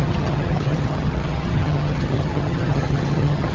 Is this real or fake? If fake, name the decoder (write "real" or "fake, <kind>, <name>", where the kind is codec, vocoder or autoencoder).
fake, vocoder, HiFi-GAN